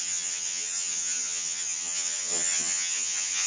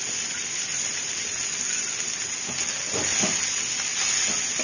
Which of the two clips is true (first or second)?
second